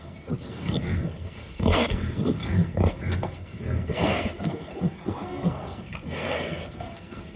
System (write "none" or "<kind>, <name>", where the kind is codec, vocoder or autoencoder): codec, SNAC